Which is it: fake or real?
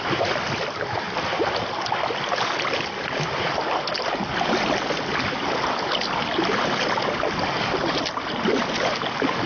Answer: real